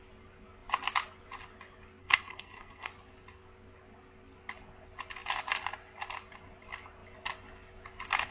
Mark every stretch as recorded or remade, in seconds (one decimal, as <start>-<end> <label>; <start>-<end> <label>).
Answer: 0.0-2.0 recorded; 2.0-2.9 remade; 2.9-8.3 recorded